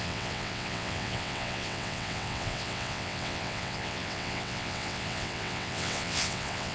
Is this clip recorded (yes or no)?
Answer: no